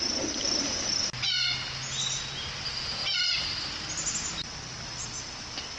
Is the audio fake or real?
real